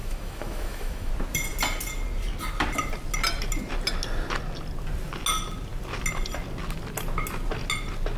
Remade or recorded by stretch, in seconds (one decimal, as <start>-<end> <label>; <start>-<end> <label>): 0.0-1.1 remade; 1.1-8.2 recorded